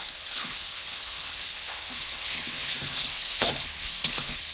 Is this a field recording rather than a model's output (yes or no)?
no